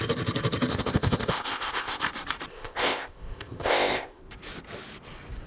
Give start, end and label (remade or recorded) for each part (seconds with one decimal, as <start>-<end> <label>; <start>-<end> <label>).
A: 0.0-0.7 recorded; 0.7-2.0 remade; 2.0-2.5 recorded; 2.5-4.2 remade; 4.2-5.5 recorded

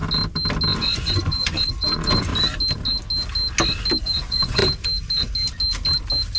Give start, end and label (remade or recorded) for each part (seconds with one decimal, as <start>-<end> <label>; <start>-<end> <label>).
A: 0.0-0.8 recorded; 0.8-2.3 remade; 2.3-4.0 recorded; 4.0-4.6 remade; 4.6-6.4 recorded

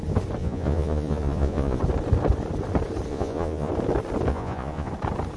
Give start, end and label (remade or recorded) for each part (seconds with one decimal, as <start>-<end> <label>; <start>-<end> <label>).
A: 0.0-0.4 recorded; 0.4-1.8 remade; 1.8-3.1 recorded; 3.1-3.7 remade; 3.7-4.3 recorded; 4.3-4.9 remade; 4.9-5.4 recorded

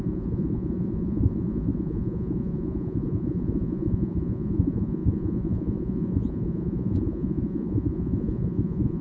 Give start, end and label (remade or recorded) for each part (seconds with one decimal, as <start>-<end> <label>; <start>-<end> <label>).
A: 0.0-9.0 remade

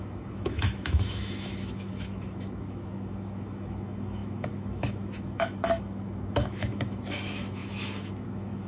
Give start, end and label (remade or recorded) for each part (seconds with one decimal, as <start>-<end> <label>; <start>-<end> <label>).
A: 0.0-8.7 remade

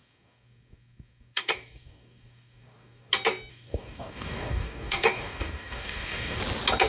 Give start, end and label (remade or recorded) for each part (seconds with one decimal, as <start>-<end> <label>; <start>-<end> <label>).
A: 0.0-3.1 remade; 3.1-3.5 recorded; 3.5-6.4 remade; 6.4-6.9 recorded

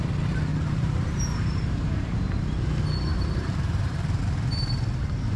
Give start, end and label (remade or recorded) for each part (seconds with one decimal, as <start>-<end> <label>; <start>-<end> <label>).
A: 0.0-0.5 recorded; 0.5-2.6 remade; 2.6-3.1 recorded; 3.1-4.2 remade; 4.2-5.4 recorded

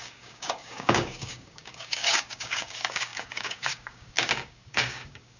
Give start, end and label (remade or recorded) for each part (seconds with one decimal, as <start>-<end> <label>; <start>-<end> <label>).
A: 0.0-5.4 remade